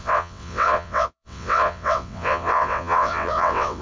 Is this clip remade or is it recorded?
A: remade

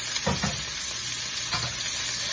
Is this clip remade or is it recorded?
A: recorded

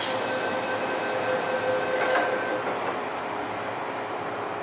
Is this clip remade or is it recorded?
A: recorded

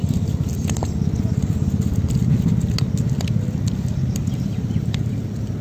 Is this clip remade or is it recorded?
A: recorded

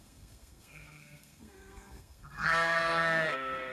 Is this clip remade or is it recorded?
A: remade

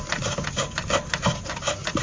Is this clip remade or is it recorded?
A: recorded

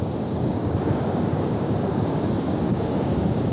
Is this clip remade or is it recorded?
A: remade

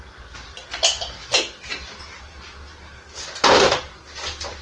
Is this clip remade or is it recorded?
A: recorded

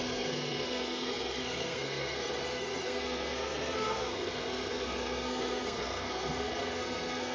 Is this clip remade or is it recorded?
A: remade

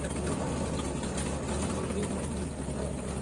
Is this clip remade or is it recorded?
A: recorded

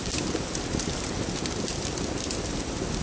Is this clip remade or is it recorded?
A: recorded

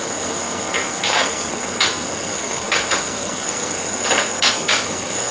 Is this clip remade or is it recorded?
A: remade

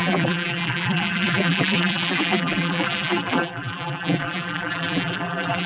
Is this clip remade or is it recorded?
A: remade